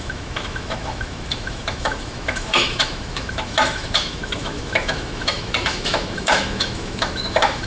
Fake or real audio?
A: fake